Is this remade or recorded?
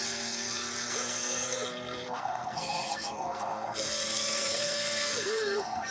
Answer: remade